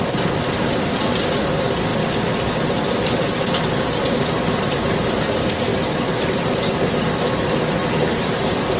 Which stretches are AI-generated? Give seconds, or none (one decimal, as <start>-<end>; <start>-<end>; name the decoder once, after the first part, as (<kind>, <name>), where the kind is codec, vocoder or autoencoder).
1.9-2.5 (vocoder, BigVGAN v2); 5.7-6.6